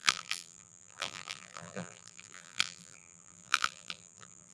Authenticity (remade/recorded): remade